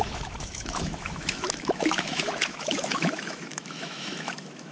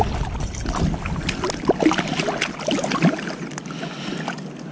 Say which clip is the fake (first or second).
first